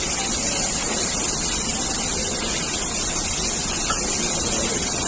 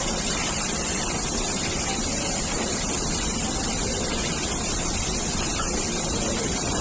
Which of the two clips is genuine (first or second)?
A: first